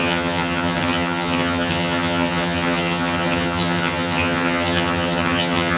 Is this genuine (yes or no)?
no